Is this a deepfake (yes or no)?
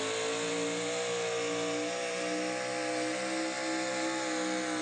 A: no